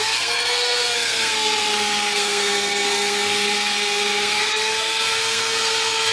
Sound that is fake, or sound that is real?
fake